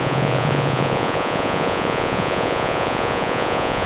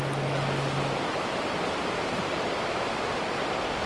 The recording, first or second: second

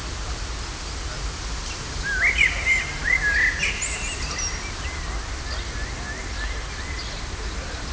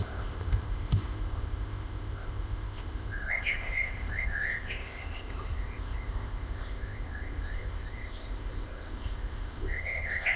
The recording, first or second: first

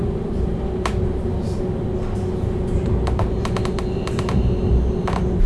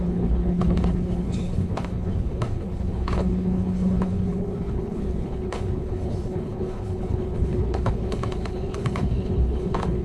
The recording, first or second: first